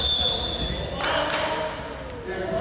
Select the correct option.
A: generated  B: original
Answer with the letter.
B